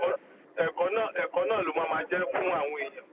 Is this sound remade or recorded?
recorded